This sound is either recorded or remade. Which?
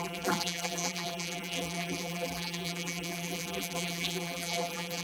remade